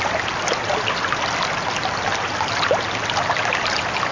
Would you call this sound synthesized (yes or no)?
no